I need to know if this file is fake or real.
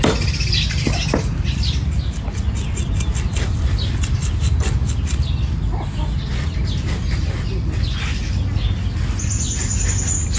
real